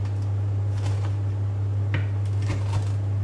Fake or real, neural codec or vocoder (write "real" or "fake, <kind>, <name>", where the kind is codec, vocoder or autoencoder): real